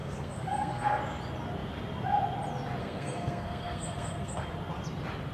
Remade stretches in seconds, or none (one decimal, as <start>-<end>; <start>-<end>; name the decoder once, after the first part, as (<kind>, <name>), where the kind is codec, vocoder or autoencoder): 0.0-1.0 (codec, SNAC); 2.8-4.4